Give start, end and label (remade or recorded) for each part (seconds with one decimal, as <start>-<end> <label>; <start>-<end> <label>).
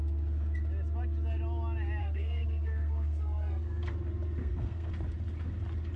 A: 0.0-2.0 recorded; 2.0-3.9 remade; 3.9-4.4 recorded; 4.4-4.9 remade; 4.9-6.0 recorded